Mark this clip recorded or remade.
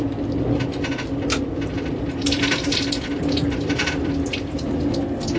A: recorded